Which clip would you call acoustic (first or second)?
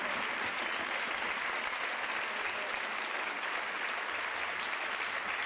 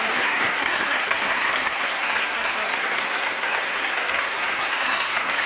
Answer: first